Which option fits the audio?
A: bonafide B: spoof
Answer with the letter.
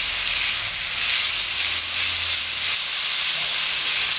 A